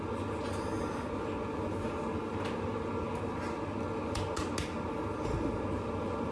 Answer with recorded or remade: recorded